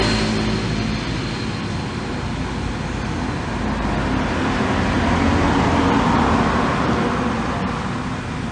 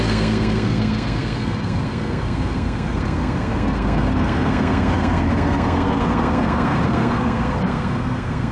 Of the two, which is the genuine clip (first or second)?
first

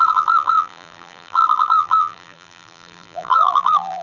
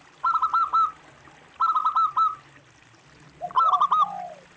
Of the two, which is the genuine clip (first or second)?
second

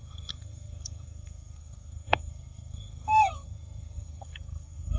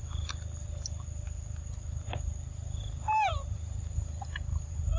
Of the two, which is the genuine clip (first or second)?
second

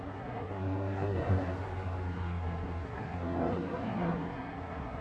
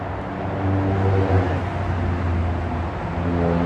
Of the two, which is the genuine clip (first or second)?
second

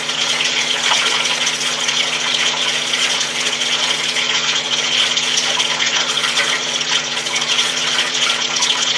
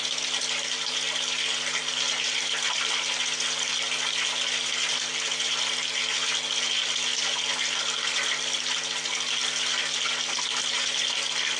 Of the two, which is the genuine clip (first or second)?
second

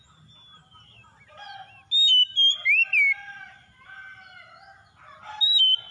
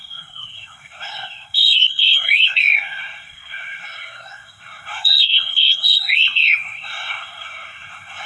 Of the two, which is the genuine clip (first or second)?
first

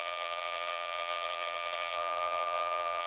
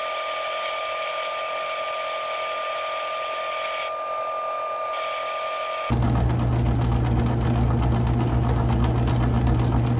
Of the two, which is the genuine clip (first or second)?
second